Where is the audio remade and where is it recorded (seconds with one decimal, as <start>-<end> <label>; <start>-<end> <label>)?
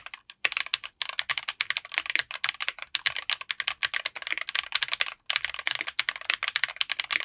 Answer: 0.0-7.2 recorded